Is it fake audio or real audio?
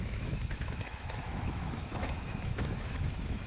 fake